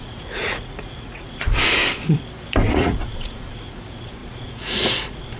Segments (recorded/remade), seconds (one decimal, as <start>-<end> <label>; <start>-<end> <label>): 0.0-1.8 remade; 1.8-2.7 recorded; 2.7-5.4 remade